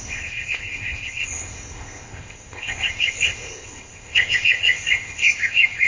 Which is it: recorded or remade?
remade